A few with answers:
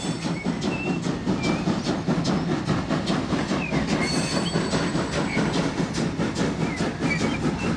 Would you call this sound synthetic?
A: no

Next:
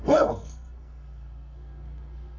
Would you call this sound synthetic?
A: yes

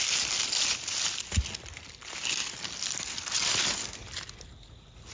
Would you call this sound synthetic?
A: no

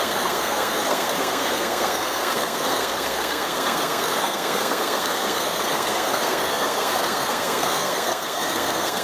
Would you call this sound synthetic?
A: yes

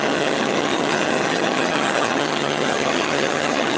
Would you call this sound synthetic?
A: yes